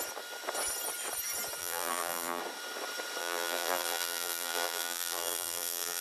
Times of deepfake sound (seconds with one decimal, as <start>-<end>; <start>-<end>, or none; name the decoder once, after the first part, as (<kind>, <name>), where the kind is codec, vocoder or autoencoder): 1.6-2.4 (vocoder, BigVGAN v2); 3.2-6.0